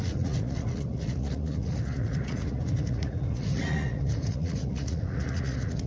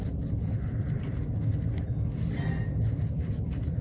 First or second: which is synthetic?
first